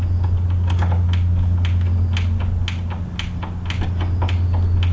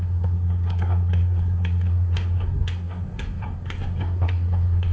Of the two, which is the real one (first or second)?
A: first